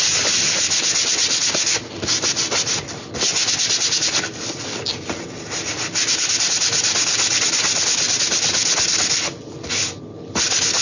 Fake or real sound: real